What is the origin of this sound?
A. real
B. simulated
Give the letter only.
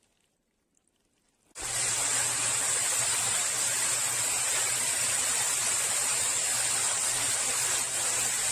A